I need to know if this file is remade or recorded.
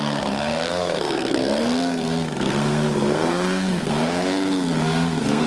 remade